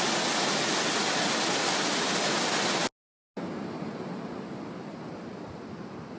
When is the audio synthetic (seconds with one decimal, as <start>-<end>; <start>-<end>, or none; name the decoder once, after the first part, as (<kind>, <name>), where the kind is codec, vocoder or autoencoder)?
none